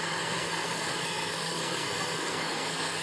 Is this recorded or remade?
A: remade